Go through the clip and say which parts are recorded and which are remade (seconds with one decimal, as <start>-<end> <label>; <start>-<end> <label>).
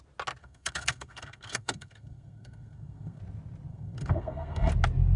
0.0-0.4 recorded; 0.4-3.2 remade; 3.2-3.7 recorded; 3.7-4.7 remade; 4.7-5.2 recorded